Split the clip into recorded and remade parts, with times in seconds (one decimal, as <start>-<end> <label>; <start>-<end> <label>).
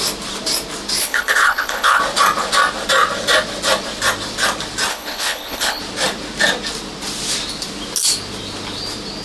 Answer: 0.0-1.0 recorded; 1.0-2.0 remade; 2.0-4.9 recorded; 4.9-5.8 remade; 5.8-9.2 recorded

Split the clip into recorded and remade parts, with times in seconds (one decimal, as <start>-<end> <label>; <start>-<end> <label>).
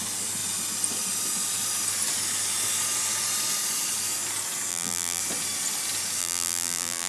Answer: 0.0-4.7 recorded; 4.7-5.2 remade; 5.2-6.2 recorded; 6.2-7.1 remade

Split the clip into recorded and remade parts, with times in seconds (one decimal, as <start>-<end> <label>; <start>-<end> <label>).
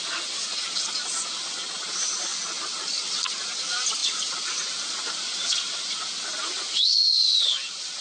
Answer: 0.0-8.0 recorded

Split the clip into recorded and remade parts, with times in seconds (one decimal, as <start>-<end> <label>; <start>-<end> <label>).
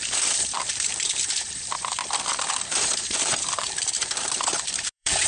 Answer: 0.0-2.0 remade; 2.0-2.6 recorded; 2.6-5.3 remade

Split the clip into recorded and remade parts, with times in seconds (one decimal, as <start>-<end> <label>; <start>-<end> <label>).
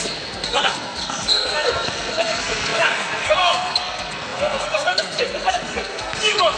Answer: 0.0-6.6 remade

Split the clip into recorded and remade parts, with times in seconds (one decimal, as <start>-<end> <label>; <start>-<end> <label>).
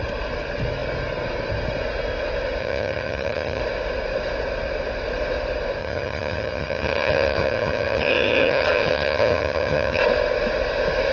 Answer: 0.0-2.6 recorded; 2.6-3.6 remade; 3.6-5.8 recorded; 5.8-10.0 remade; 10.0-11.1 recorded